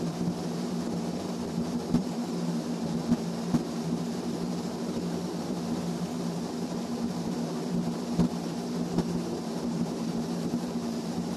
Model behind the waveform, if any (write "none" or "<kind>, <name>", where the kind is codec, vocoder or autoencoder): vocoder, BigVGAN v2